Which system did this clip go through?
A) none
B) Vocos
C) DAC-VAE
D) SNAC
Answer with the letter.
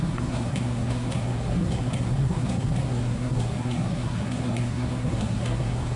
D